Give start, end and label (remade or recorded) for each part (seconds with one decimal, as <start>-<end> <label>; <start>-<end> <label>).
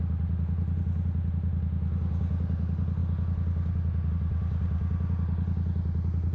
0.0-6.3 recorded